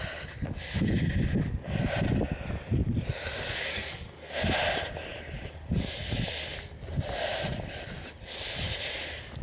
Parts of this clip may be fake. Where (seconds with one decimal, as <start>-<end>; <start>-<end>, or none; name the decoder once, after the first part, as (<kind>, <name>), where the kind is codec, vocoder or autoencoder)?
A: 3.7-4.3 (codec, SNAC)